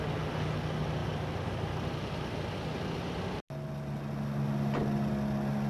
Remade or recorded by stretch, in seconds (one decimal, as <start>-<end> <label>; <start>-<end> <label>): 0.0-5.7 recorded